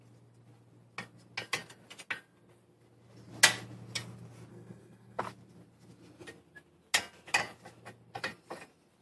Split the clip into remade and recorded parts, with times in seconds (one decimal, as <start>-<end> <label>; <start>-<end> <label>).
0.0-4.5 recorded; 4.5-5.2 remade; 5.2-9.0 recorded

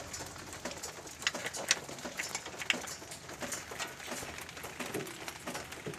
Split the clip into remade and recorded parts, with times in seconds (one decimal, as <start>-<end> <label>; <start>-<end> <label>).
0.0-6.0 recorded

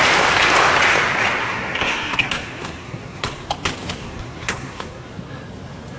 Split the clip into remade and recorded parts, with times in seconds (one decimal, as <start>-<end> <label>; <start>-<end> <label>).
0.0-1.4 recorded; 1.4-3.5 remade; 3.5-4.0 recorded; 4.0-5.1 remade; 5.1-6.0 recorded

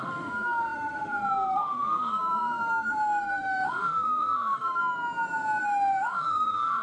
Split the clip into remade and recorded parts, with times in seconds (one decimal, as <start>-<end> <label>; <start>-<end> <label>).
0.0-4.8 remade; 4.8-5.6 recorded; 5.6-6.8 remade